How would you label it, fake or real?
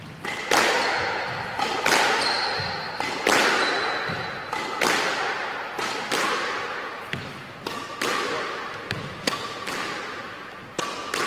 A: real